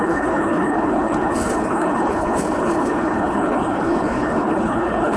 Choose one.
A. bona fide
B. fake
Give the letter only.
B